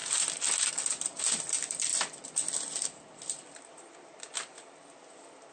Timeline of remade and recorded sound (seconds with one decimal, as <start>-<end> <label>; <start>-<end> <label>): 0.0-5.5 recorded